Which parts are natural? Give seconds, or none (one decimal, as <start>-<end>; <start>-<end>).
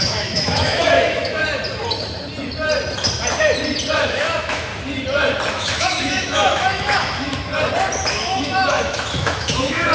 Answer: 1.4-4.0; 4.7-5.5; 7.5-8.1